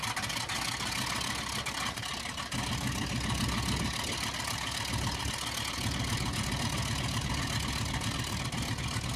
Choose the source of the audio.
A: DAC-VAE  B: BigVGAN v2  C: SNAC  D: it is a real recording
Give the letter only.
D